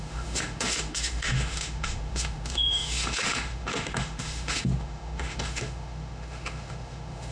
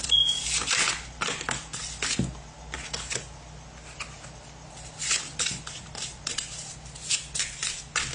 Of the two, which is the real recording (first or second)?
second